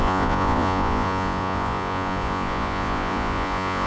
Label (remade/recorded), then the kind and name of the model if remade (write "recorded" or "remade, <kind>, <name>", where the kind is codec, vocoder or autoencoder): remade, vocoder, Vocos